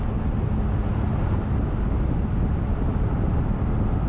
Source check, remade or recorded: recorded